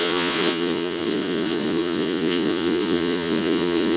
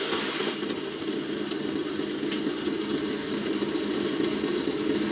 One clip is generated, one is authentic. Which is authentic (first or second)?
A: second